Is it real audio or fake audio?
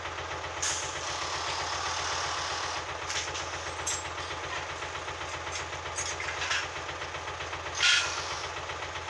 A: real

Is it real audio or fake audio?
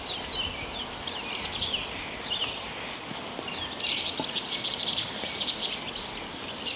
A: real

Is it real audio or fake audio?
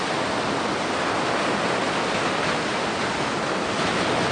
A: real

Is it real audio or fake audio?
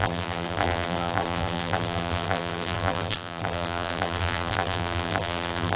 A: fake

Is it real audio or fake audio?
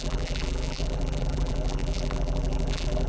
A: fake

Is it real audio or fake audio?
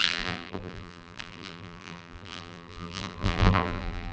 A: fake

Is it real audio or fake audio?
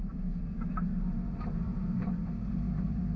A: fake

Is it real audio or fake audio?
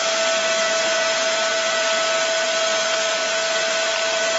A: real